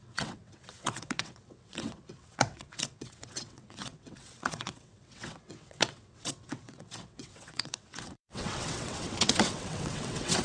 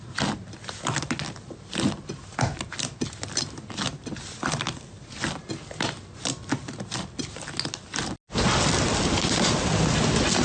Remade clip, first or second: first